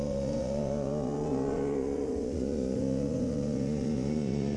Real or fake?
fake